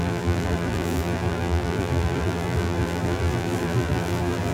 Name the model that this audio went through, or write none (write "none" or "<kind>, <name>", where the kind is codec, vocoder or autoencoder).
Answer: vocoder, BigVGAN v2